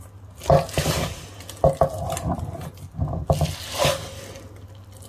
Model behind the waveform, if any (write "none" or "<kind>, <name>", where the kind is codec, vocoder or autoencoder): none